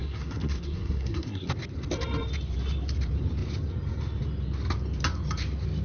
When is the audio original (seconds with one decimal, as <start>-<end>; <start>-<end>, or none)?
1.5-5.8